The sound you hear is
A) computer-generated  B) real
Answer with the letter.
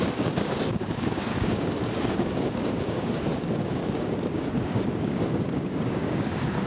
A